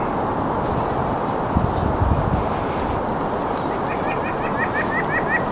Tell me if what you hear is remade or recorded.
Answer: recorded